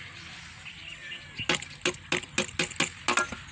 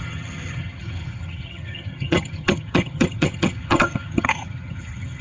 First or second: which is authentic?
first